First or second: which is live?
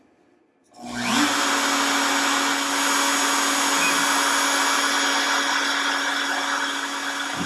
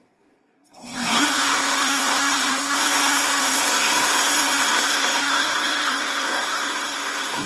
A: first